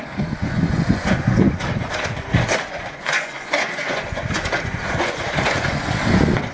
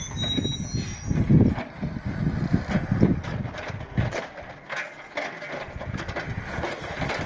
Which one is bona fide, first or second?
second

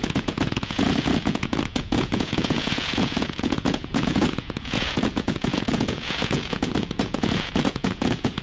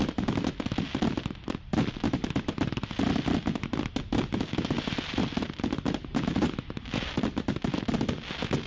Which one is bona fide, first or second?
second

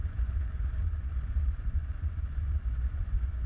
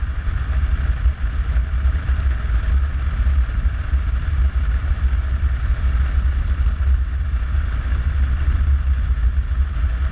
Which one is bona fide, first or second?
second